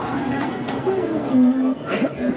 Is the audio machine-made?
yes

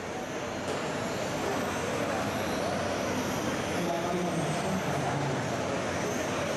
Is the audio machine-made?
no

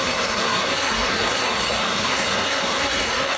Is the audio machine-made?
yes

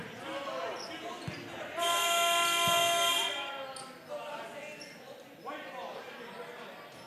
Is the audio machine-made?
no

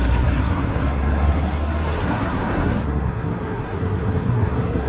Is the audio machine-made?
yes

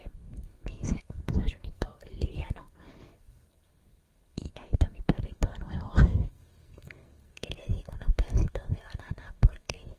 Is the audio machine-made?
yes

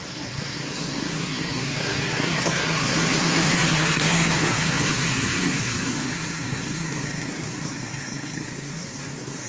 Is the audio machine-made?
yes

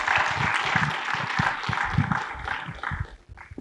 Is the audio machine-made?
no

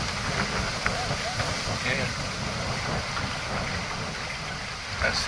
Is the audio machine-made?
no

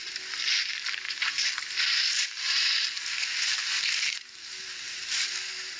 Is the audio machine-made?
no